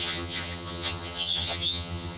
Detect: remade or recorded remade